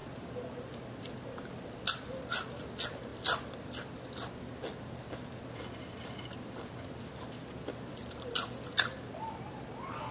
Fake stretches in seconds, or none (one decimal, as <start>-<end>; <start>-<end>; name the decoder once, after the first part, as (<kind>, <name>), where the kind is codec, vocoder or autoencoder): none